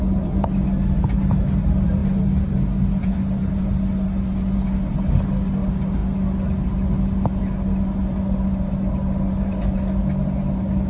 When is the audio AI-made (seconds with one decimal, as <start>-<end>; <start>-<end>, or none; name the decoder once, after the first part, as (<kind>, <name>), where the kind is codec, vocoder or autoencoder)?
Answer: none